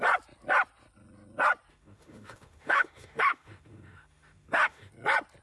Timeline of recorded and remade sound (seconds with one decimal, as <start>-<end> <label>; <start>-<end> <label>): 0.0-1.7 recorded; 1.7-4.9 remade; 4.9-5.4 recorded